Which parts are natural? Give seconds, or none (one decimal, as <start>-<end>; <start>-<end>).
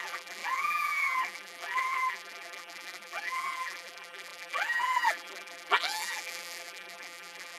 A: none